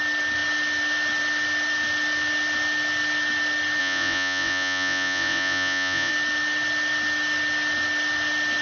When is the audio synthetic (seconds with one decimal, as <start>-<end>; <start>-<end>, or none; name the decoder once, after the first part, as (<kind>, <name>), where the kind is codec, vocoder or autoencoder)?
3.8-6.1 (vocoder, Vocos)